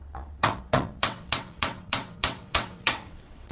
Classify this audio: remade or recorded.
remade